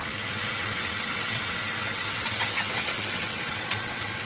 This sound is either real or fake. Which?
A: fake